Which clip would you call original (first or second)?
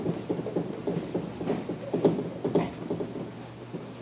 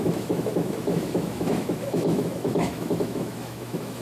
first